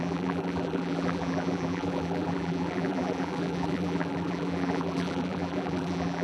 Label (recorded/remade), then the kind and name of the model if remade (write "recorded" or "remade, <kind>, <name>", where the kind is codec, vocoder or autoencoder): remade, vocoder, BigVGAN v2